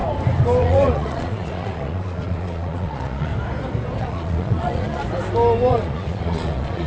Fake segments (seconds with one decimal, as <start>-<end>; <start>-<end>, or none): 0.6-3.3; 4.0-5.0; 5.7-6.9